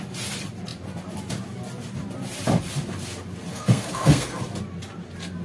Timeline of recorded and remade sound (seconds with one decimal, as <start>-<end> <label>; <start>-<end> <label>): 0.0-3.5 recorded; 3.5-4.4 remade; 4.4-5.4 recorded